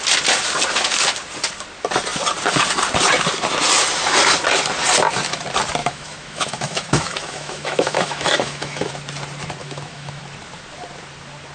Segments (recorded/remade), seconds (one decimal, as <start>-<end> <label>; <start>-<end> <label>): 0.0-5.8 recorded; 5.8-8.9 remade; 8.9-9.6 recorded; 9.6-10.2 remade; 10.2-11.5 recorded